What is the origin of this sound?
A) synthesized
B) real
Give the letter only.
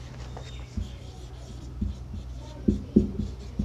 B